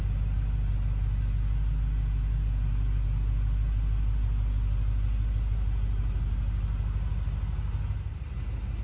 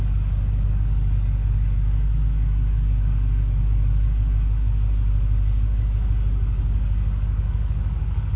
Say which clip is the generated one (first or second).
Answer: second